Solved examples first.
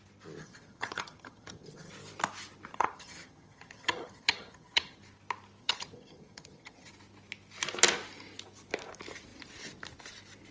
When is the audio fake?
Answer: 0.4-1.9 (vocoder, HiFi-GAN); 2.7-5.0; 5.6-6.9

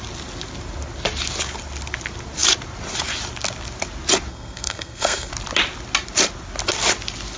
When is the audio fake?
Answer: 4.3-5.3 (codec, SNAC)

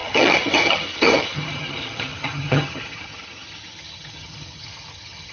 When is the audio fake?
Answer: 0.0-5.3 (vocoder, HiFi-GAN)

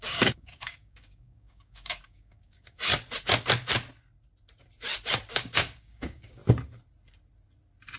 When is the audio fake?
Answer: 0.0-2.9 (codec, DAC); 5.3-6.4